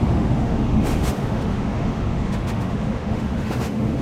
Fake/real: fake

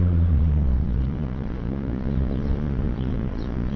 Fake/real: fake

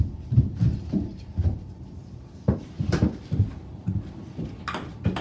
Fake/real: real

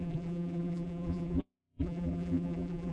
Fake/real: fake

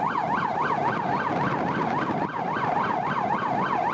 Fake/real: real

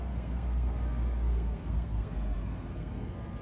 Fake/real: fake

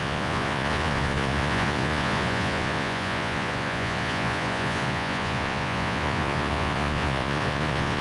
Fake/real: fake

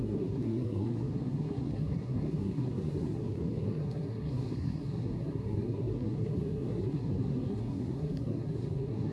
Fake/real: fake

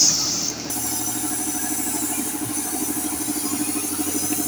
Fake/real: real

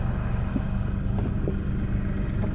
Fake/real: real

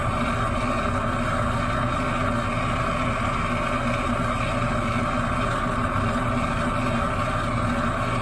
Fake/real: real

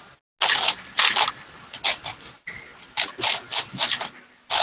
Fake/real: real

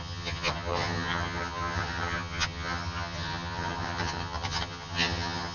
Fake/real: fake